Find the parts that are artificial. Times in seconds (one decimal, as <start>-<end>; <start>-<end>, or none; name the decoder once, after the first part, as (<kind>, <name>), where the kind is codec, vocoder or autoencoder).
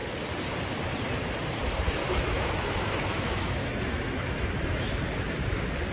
2.0-4.9 (autoencoder, DAC-VAE)